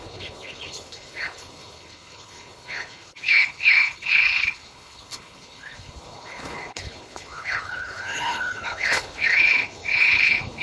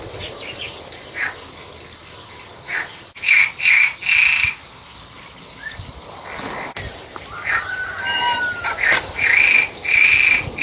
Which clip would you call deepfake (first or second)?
first